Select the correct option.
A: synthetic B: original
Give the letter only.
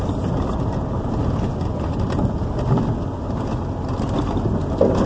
B